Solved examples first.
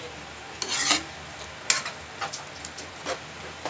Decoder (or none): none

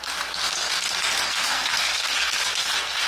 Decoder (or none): codec, SNAC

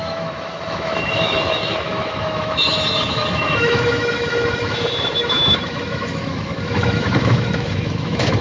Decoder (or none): autoencoder, DAC-VAE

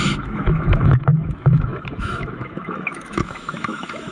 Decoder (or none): autoencoder, DAC-VAE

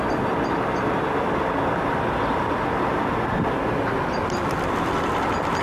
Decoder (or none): none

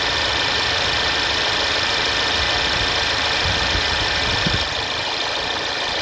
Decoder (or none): none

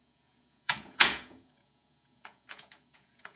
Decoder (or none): vocoder, Vocos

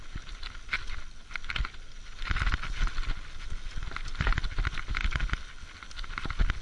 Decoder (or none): none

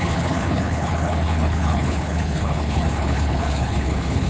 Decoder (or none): codec, HILCodec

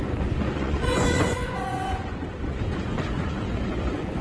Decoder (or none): vocoder, Vocos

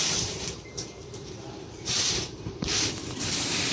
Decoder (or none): vocoder, BigVGAN v2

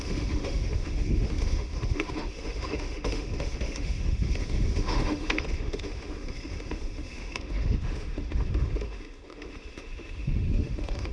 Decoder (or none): autoencoder, DAC-VAE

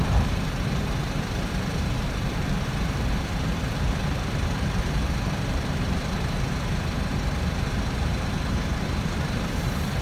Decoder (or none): vocoder, BigVGAN v2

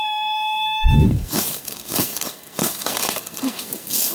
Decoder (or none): codec, SNAC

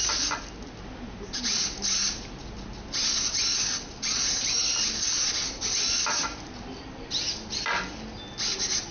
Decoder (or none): none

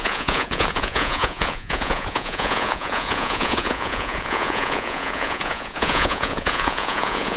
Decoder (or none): vocoder, Vocos